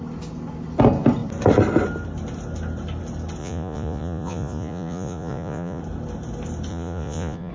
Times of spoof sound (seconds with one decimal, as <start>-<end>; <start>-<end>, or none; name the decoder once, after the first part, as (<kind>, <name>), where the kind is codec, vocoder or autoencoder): 3.4-5.8 (vocoder, Vocos); 6.7-7.5